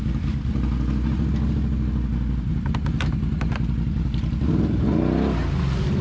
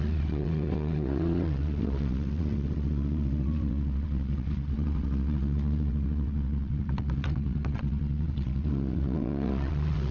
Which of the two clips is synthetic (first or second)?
second